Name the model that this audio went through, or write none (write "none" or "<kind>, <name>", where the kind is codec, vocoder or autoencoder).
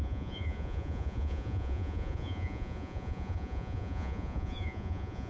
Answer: vocoder, Vocos